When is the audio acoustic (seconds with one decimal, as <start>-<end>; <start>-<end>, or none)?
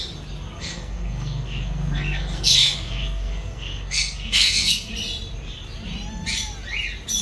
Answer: 0.0-0.6; 4.9-7.2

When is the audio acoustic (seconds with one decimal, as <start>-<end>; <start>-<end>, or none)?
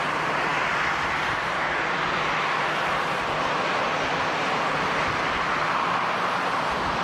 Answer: 0.0-7.0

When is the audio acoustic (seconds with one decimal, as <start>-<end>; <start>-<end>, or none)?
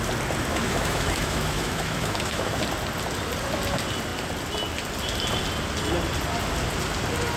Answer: 0.0-0.5; 2.6-7.4